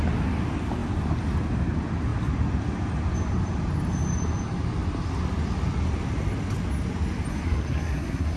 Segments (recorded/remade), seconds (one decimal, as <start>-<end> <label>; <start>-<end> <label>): 0.0-7.3 recorded; 7.3-8.4 remade